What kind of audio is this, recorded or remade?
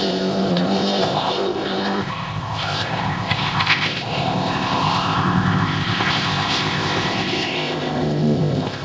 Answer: remade